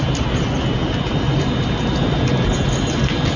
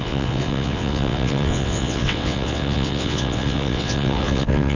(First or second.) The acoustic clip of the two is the first